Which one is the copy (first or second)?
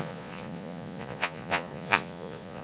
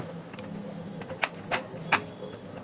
first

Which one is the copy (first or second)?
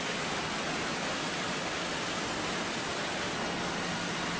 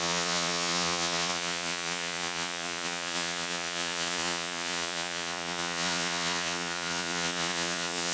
second